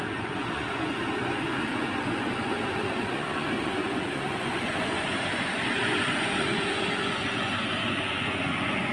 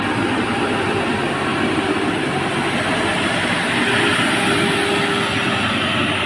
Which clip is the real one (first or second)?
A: second